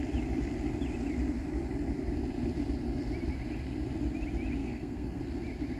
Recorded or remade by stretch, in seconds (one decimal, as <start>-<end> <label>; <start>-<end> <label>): 0.0-4.6 recorded; 4.6-5.2 remade; 5.2-5.8 recorded